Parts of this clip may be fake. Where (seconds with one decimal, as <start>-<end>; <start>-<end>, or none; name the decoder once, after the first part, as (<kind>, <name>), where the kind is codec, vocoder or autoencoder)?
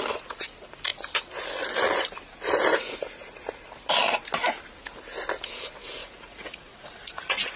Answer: 6.0-7.6 (vocoder, Vocos)